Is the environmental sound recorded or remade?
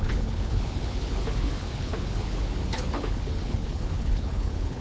remade